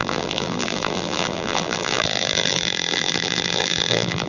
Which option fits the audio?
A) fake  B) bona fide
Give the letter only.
A